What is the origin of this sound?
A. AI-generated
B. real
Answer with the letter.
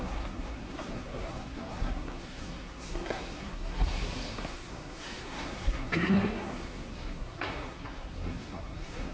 A